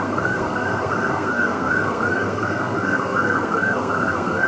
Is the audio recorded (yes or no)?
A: no